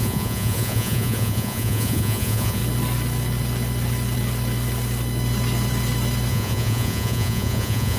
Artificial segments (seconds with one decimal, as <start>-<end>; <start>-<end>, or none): 0.0-2.6; 6.3-8.0